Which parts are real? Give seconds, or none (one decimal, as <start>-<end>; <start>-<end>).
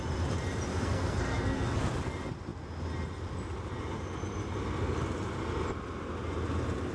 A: 0.0-0.7; 1.8-6.9